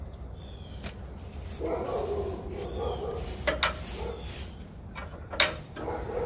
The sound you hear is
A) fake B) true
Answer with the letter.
B